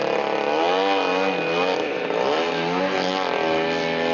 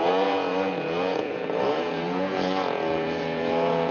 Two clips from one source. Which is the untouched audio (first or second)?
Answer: first